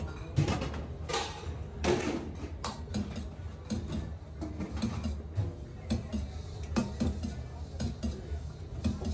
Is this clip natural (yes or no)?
yes